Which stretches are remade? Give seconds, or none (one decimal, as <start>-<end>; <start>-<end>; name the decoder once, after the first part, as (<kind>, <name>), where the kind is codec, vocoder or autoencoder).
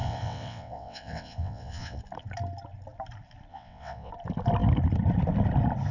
0.0-2.0 (vocoder, WaveNeXt); 3.5-4.1